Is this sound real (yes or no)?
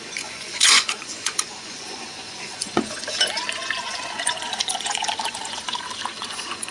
no